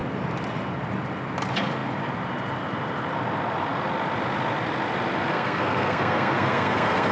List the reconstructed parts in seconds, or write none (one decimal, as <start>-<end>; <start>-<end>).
5.3-7.1